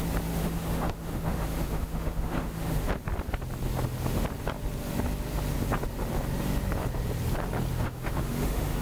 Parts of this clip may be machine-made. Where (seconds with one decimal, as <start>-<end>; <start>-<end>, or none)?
0.4-2.9; 7.7-8.8